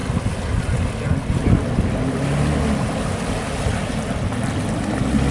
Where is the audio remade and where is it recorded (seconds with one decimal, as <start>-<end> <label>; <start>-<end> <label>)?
0.0-5.3 recorded